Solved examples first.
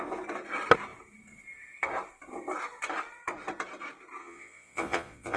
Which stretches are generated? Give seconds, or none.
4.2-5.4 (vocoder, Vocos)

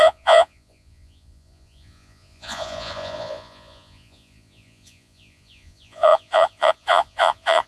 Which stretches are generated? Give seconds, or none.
0.0-7.7 (vocoder, Vocos)

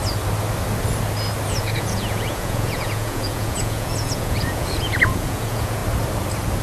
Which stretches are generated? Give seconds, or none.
1.5-5.8 (vocoder, Vocos)

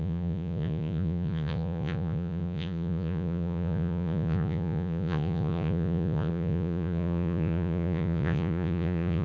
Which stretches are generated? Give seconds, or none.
0.0-9.2 (vocoder, Vocos)

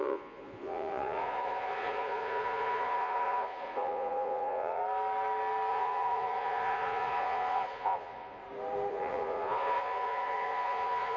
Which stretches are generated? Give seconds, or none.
0.0-4.8 (vocoder, Vocos); 5.7-8.4; 8.9-11.2

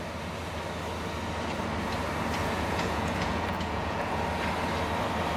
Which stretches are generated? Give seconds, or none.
2.4-4.2 (vocoder, Vocos)

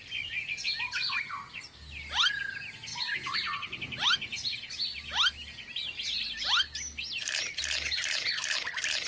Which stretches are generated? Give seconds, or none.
none

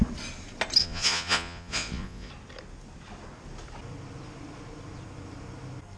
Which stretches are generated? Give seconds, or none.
0.8-2.3 (vocoder, Vocos)